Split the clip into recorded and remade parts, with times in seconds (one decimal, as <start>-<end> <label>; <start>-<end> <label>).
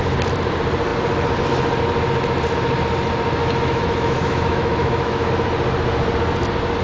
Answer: 0.0-3.4 recorded; 3.4-5.3 remade; 5.3-6.8 recorded